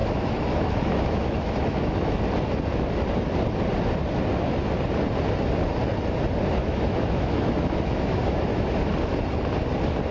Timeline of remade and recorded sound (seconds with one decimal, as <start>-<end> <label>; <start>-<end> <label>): 0.0-2.2 remade; 2.2-6.6 recorded; 6.6-8.9 remade; 8.9-10.1 recorded